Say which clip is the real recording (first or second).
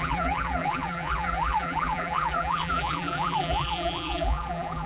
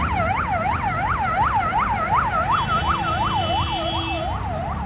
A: second